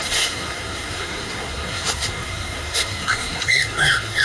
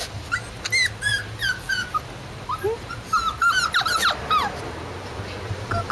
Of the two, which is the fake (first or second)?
first